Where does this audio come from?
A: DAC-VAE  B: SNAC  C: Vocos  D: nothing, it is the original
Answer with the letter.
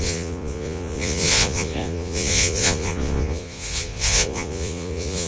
C